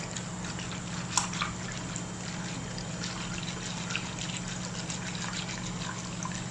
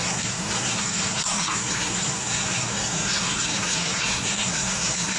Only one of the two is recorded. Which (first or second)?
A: first